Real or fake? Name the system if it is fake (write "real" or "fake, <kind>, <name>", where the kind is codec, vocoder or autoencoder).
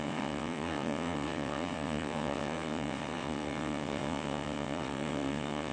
fake, vocoder, WaveNeXt